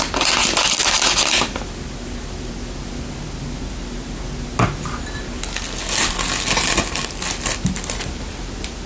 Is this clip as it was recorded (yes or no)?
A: yes